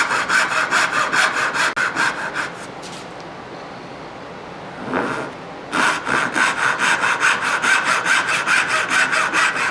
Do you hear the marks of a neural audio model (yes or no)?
no